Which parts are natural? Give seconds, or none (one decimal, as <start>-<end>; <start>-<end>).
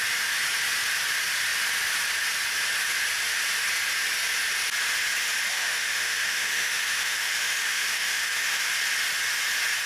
0.0-5.5; 8.7-9.9